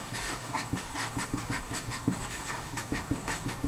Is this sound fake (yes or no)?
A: yes